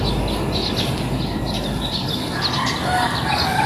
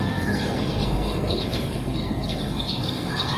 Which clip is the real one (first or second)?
first